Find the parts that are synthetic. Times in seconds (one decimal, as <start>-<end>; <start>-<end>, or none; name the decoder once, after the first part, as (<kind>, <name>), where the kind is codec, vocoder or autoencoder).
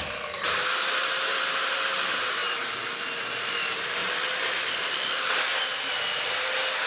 0.0-2.4 (vocoder, BigVGAN v2); 3.3-6.9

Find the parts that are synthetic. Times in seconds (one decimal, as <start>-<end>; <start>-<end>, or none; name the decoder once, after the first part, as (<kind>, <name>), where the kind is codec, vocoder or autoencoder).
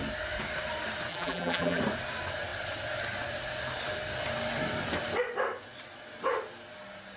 1.1-1.8 (vocoder, BigVGAN v2)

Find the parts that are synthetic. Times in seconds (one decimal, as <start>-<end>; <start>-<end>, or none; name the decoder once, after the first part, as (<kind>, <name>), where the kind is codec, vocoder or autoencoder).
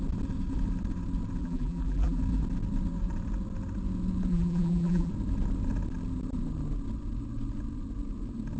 1.4-2.2 (vocoder, BigVGAN v2); 4.3-5.1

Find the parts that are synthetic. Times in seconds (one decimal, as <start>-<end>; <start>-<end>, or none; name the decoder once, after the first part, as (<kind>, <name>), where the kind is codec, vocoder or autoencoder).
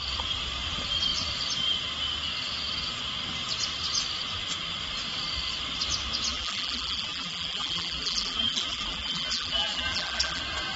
6.3-10.4 (vocoder, BigVGAN v2)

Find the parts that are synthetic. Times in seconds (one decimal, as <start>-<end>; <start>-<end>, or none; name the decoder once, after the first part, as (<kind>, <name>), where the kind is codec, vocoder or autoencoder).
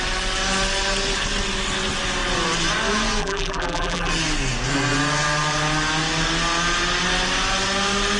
3.2-4.1 (vocoder, BigVGAN v2)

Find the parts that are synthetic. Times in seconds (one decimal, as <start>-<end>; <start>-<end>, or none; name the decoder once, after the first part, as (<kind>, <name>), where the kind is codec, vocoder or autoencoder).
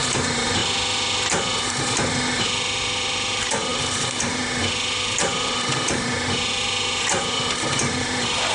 0.0-0.6 (vocoder, BigVGAN v2); 1.6-8.5